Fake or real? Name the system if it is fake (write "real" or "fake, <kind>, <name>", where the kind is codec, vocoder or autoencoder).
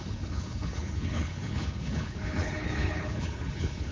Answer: fake, codec, HILCodec